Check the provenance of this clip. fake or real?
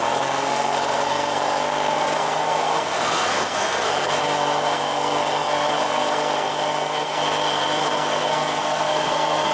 fake